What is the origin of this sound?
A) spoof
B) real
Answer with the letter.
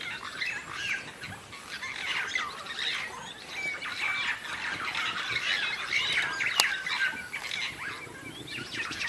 B